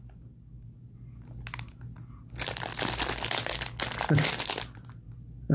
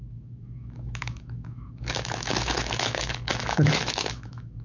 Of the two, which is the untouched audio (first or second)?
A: first